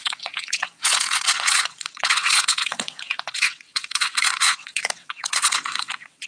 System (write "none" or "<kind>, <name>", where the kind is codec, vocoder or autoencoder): vocoder, WaveNeXt